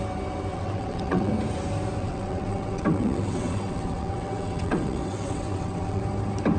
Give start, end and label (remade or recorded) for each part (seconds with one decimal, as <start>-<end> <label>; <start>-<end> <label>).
0.0-0.5 recorded; 0.5-1.3 remade; 1.3-2.0 recorded; 2.0-6.0 remade; 6.0-6.6 recorded